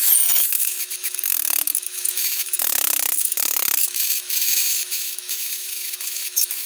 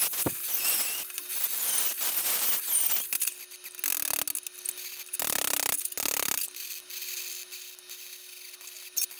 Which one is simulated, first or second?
first